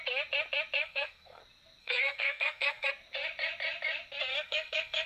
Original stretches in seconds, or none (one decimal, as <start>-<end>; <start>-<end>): 0.0-0.8; 1.4-1.8; 2.9-4.3